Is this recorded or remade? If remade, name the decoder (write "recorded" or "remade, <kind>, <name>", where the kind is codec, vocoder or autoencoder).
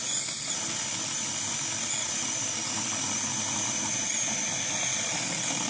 recorded